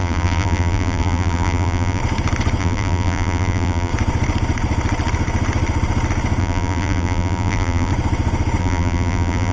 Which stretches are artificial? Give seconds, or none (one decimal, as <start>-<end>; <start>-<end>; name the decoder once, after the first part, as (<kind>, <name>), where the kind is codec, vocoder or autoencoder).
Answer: 0.0-2.0 (vocoder, BigVGAN v2); 2.6-3.9; 6.4-7.9; 8.6-9.5

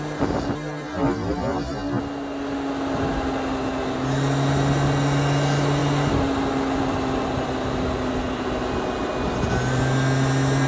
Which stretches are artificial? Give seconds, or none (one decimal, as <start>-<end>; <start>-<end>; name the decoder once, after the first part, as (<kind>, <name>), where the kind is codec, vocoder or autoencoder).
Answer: none

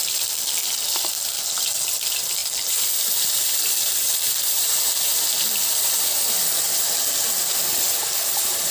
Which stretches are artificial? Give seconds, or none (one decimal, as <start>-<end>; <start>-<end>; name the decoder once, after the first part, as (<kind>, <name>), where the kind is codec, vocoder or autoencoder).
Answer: 0.0-0.6 (vocoder, BigVGAN v2); 1.6-2.4; 3.7-6.8; 7.5-8.7

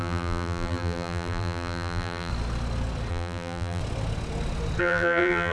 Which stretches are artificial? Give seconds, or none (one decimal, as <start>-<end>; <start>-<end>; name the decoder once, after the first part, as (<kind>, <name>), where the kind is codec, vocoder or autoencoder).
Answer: 0.0-2.3 (vocoder, BigVGAN v2); 3.1-3.8; 4.8-5.5